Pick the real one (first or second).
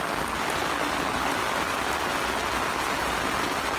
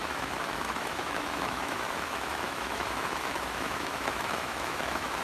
first